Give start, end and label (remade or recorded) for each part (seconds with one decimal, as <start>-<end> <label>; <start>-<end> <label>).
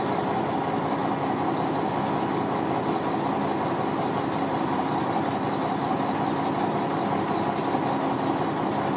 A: 0.0-1.0 remade; 1.0-3.7 recorded; 3.7-5.8 remade; 5.8-6.6 recorded; 6.6-9.0 remade